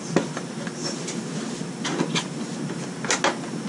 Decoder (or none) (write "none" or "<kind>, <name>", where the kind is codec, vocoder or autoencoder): none